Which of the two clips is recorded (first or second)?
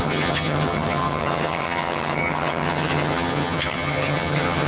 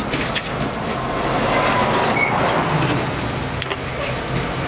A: second